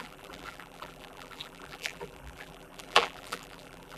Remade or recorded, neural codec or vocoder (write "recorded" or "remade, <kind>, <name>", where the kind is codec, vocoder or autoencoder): remade, vocoder, BigVGAN v2